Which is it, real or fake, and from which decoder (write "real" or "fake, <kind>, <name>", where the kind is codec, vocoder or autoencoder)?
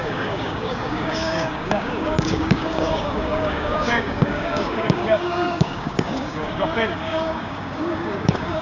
fake, codec, DAC